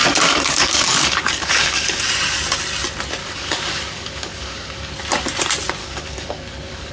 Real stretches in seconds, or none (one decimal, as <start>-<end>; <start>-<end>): 2.0-3.2; 4.9-5.8